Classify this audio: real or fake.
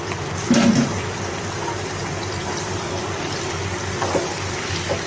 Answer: real